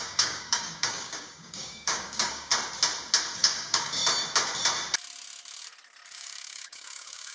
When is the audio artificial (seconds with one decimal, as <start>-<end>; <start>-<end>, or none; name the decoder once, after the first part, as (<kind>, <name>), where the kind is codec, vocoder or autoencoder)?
0.0-2.5 (codec, DAC); 3.3-4.0; 6.1-7.3